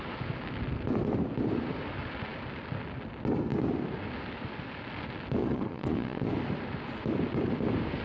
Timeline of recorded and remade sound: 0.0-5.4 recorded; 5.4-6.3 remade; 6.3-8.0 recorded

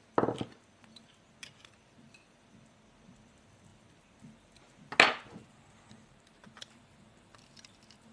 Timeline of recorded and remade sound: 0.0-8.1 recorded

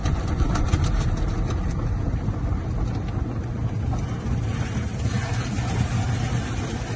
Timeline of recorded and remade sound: 0.0-0.8 remade; 0.8-7.0 recorded